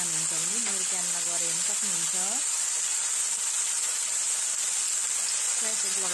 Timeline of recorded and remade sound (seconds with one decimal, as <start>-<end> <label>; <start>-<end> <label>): 0.0-6.1 recorded